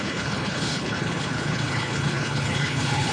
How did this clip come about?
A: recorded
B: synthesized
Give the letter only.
B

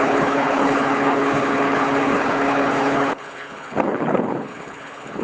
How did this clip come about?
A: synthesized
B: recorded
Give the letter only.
A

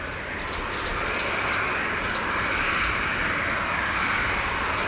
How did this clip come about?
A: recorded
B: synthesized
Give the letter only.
A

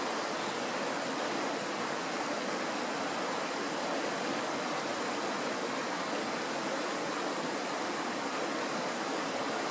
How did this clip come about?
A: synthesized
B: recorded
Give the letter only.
B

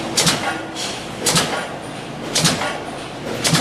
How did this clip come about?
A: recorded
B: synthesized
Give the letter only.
A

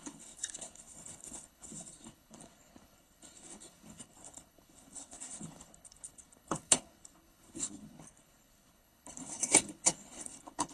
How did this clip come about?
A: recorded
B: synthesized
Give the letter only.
B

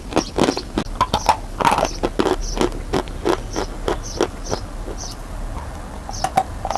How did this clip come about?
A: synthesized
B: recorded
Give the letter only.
B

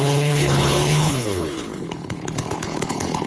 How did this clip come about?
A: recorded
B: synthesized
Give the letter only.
B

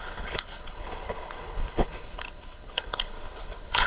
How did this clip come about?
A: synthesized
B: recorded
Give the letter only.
A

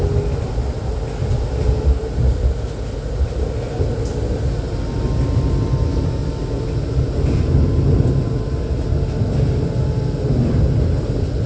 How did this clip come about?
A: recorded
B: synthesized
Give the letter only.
A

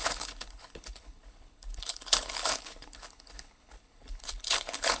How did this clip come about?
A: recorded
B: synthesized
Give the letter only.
B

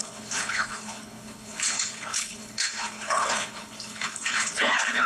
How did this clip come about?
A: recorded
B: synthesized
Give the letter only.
B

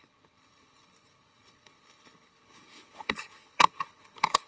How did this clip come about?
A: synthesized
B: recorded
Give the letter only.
A